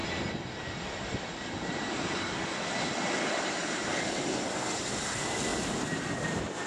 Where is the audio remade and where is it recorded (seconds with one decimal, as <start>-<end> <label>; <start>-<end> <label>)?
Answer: 0.0-0.6 recorded; 0.6-6.7 remade